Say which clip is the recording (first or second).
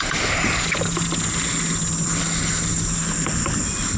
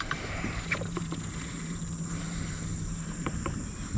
first